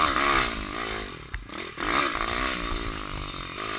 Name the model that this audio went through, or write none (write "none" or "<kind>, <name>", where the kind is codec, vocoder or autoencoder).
none